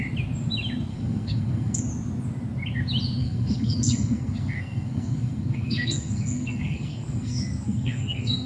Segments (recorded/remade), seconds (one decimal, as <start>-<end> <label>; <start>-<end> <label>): 0.0-0.9 recorded; 0.9-1.8 remade; 1.8-3.2 recorded; 3.2-8.5 remade